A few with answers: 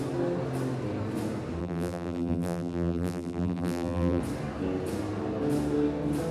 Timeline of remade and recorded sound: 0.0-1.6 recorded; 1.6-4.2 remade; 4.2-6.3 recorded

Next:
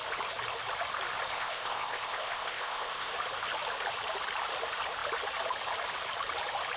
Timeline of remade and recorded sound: 0.0-1.3 recorded; 1.3-3.1 remade; 3.1-6.8 recorded